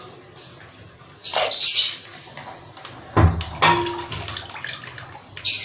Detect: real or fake real